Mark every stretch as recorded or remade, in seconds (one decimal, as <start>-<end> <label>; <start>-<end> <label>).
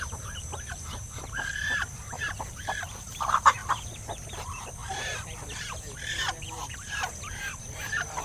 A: 0.0-3.6 remade; 3.6-4.3 recorded; 4.3-4.8 remade; 4.8-6.5 recorded; 6.5-8.2 remade